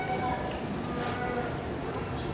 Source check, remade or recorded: recorded